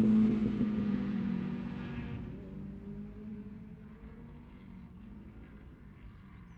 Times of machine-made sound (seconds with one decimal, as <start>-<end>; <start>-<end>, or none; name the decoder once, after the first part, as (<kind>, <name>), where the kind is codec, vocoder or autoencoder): 0.4-1.7 (vocoder, Vocos); 3.3-4.6